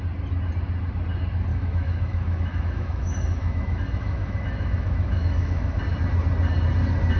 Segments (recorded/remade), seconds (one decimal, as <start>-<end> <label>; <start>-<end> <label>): 0.0-1.5 recorded; 1.5-5.8 remade; 5.8-7.2 recorded